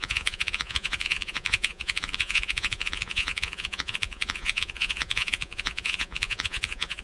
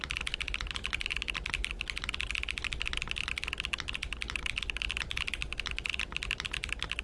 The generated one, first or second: first